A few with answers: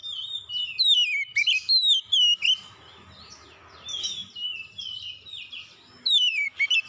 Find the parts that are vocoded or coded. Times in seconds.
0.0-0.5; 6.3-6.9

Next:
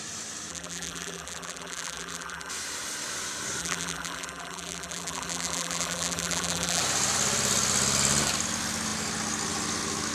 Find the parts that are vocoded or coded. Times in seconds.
0.5-2.5; 3.6-6.8

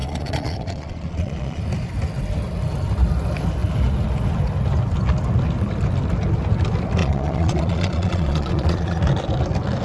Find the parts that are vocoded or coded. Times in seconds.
0.0-1.6; 7.0-9.0

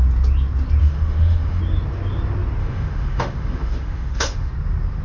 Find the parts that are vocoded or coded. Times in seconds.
0.8-1.6; 2.6-4.5

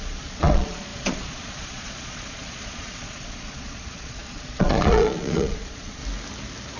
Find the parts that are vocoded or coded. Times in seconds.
0.0-6.0